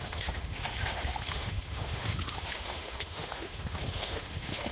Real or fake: fake